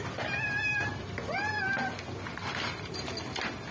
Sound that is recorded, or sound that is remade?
recorded